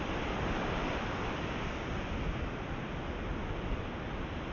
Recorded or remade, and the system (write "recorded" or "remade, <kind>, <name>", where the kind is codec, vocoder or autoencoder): recorded